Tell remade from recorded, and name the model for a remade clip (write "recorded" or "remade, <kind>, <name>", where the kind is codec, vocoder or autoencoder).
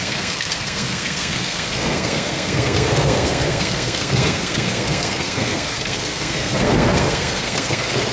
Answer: remade, codec, SNAC